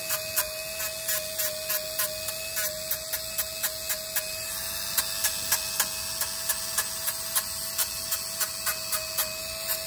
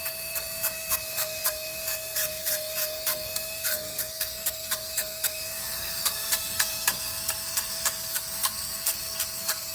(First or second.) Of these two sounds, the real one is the first